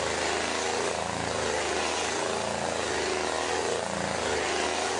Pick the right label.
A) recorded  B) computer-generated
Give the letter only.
A